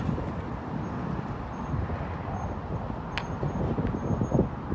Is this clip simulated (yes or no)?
no